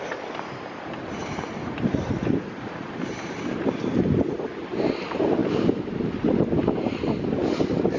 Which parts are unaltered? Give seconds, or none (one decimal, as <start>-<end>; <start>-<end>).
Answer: 0.0-1.2; 3.3-8.0